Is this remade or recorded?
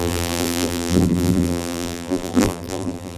remade